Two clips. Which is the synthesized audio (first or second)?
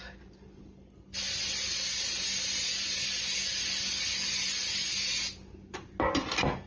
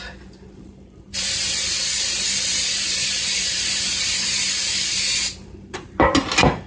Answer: second